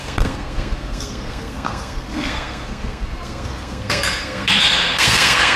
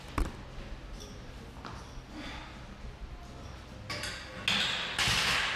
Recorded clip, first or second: second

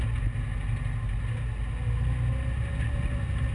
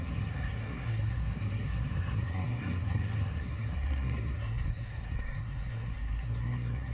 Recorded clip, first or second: first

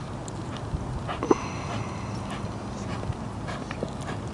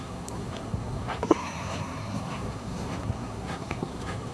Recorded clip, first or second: first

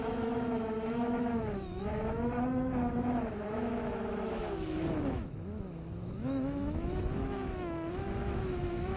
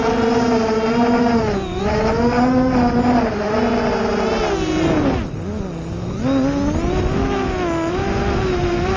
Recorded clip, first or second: second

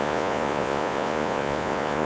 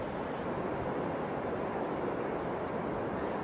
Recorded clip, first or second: second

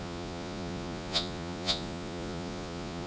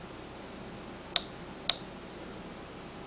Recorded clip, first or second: second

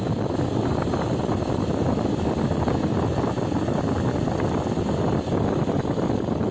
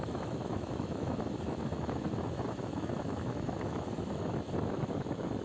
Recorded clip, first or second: first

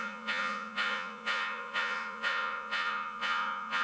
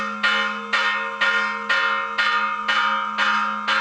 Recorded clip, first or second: second